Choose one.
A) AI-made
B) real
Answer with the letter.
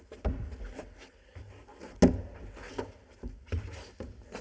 B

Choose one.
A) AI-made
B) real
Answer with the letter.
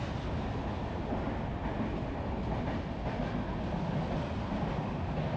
B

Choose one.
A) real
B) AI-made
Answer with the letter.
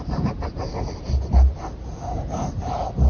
A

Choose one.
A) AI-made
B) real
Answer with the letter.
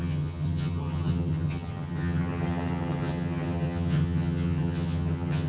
A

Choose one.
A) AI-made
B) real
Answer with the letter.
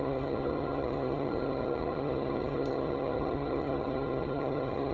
A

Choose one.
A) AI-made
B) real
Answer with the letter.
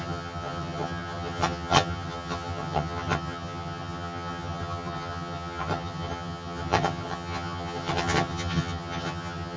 A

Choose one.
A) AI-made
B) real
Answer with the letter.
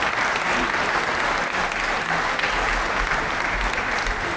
B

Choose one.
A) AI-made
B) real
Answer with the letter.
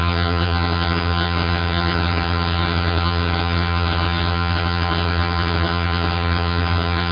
A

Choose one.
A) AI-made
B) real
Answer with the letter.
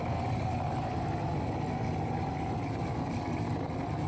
B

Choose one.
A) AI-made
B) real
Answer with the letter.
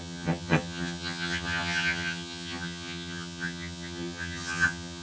A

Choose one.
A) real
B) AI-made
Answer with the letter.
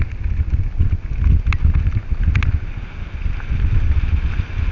A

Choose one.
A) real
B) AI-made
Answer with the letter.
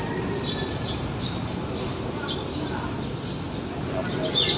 A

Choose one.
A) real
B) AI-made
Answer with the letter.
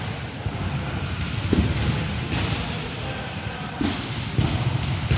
A